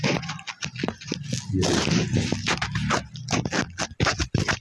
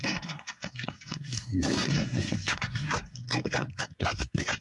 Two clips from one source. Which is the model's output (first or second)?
second